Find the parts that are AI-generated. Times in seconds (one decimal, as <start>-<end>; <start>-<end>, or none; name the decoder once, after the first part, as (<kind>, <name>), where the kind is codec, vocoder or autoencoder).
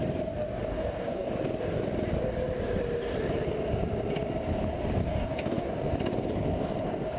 0.7-1.3 (codec, DAC); 5.0-5.9